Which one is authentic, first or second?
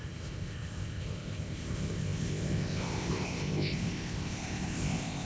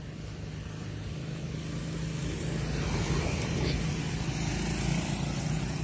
second